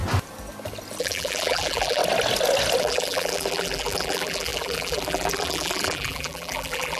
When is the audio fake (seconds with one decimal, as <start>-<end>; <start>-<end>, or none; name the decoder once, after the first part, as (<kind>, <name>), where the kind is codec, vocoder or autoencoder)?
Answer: 1.0-2.0 (vocoder, BigVGAN v2); 2.8-7.0